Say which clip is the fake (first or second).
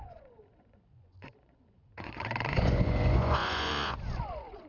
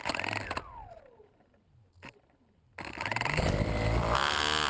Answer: first